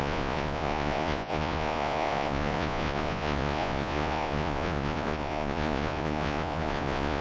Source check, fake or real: fake